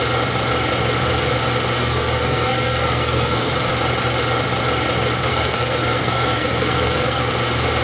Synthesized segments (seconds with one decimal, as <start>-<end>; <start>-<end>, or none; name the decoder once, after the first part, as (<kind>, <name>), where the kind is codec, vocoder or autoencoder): 1.8-3.5 (codec, SNAC); 5.3-7.3